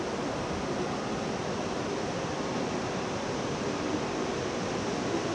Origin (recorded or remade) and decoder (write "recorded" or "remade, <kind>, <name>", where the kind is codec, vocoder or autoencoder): recorded